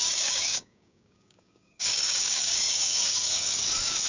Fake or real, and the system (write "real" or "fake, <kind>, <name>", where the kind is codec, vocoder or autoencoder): fake, codec, DAC